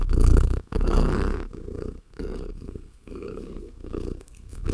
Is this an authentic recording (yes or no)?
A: no